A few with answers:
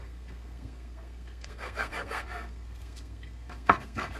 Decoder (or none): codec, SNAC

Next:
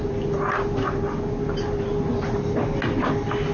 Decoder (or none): none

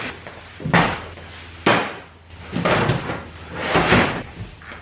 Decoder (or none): none